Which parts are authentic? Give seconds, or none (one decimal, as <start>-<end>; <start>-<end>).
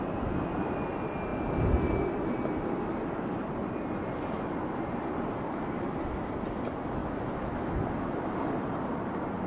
0.0-7.0; 7.9-9.5